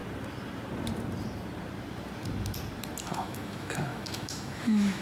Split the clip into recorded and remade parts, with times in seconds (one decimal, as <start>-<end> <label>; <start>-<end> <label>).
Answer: 0.0-3.0 recorded; 3.0-5.0 remade